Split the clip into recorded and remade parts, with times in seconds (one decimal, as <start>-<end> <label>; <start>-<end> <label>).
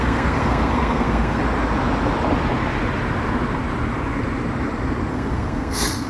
0.0-1.4 remade; 1.4-5.1 recorded; 5.1-6.1 remade